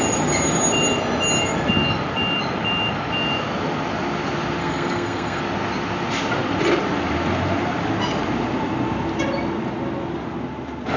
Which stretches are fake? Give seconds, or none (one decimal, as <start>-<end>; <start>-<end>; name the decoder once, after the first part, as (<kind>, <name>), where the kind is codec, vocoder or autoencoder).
4.6-5.4 (codec, SNAC)